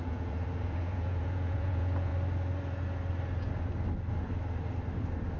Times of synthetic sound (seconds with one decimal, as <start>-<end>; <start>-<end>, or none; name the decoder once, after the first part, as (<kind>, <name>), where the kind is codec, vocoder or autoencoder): 0.0-2.1 (vocoder, Vocos)